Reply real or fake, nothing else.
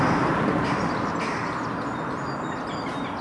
real